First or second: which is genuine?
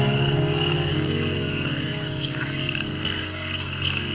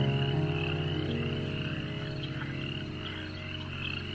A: second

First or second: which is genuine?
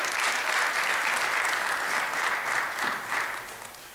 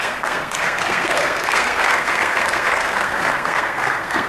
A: first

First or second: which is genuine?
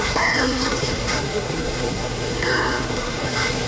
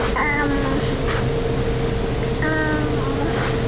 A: second